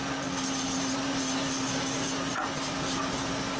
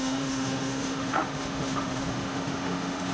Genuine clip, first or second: first